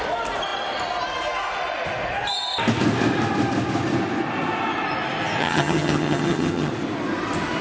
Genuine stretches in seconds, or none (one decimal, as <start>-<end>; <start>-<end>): 0.0-5.4; 6.7-7.6